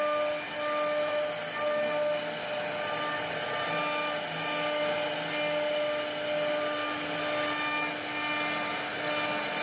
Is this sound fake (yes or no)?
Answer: no